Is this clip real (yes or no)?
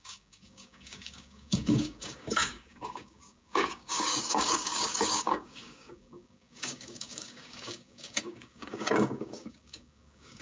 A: no